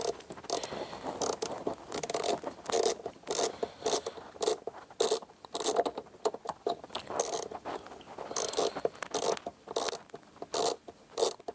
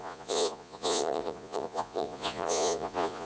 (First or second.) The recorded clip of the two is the first